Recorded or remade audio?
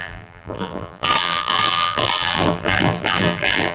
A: remade